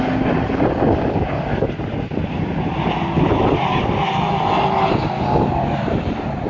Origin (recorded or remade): recorded